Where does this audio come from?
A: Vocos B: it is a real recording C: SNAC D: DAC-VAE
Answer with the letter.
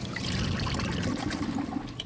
B